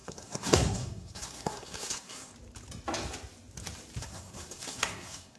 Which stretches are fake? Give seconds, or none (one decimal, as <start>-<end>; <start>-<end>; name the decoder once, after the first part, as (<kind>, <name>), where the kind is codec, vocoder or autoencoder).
0.0-2.3 (codec, SNAC); 4.0-5.4